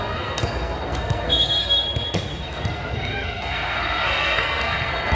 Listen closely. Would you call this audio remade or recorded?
remade